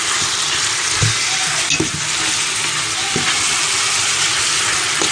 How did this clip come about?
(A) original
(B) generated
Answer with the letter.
A